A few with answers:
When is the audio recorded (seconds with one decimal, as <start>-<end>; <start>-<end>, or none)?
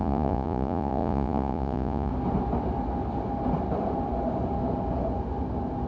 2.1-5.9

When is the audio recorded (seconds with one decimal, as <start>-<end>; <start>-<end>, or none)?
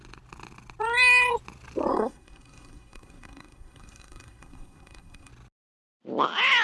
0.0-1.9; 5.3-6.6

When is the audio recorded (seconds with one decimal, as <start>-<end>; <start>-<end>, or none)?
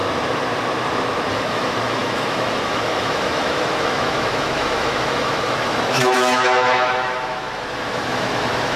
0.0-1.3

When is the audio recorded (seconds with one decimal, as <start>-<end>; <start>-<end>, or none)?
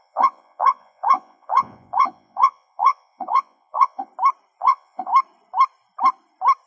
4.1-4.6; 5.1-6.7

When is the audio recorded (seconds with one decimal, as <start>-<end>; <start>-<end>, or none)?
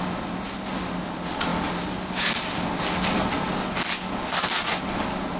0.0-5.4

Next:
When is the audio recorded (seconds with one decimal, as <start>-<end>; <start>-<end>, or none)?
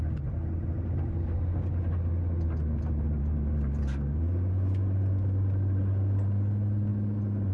0.0-7.5